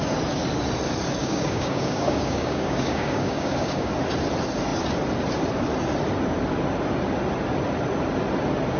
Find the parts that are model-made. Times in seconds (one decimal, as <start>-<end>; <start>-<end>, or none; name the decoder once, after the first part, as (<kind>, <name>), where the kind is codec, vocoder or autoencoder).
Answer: 1.2-3.9 (codec, DAC)